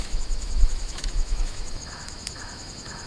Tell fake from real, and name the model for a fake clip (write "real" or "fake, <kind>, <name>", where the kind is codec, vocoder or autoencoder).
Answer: fake, autoencoder, DAC-VAE